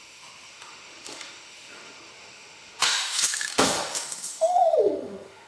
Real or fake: fake